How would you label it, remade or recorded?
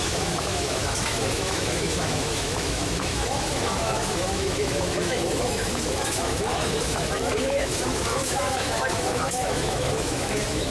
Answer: remade